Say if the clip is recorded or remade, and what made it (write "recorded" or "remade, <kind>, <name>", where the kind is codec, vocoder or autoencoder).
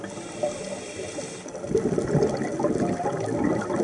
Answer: recorded